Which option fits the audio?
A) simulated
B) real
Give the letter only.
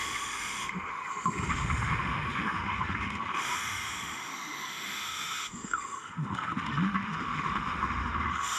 A